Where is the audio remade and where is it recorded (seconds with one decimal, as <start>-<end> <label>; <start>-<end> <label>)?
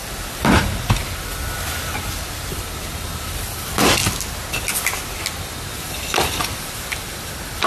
0.0-1.0 remade; 1.0-3.2 recorded; 3.2-4.0 remade; 4.0-5.9 recorded; 5.9-7.7 remade